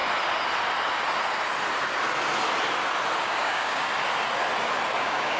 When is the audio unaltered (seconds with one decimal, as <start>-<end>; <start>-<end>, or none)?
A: 0.0-3.2; 3.9-5.0